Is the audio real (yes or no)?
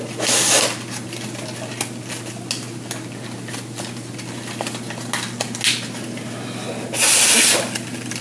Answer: yes